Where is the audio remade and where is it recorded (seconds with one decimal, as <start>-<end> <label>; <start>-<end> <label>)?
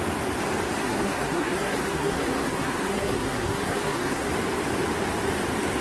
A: 0.0-0.8 recorded; 0.8-4.3 remade; 4.3-5.8 recorded